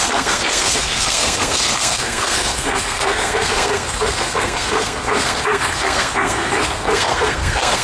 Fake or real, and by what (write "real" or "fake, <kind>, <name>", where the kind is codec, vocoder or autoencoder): fake, codec, SNAC